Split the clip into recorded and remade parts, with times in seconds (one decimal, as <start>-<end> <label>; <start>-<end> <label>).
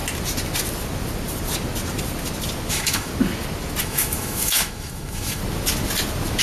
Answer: 0.0-2.7 recorded; 2.7-3.1 remade; 3.1-3.8 recorded; 3.8-5.4 remade; 5.4-6.4 recorded